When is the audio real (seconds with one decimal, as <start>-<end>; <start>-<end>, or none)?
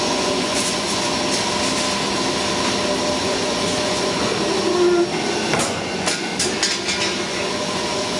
1.2-3.2; 4.3-5.6; 6.3-7.3